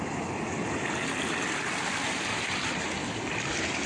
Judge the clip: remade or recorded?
recorded